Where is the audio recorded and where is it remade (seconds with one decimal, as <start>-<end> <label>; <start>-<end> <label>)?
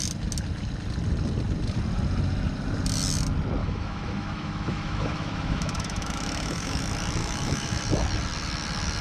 0.0-3.6 recorded; 3.6-6.8 remade; 6.8-7.2 recorded; 7.2-7.8 remade; 7.8-9.0 recorded